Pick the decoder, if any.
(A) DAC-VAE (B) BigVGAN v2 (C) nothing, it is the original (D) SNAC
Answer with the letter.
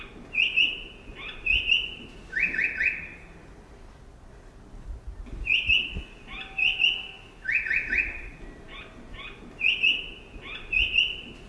C